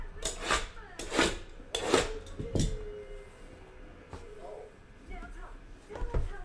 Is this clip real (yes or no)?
yes